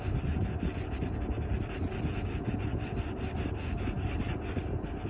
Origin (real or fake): real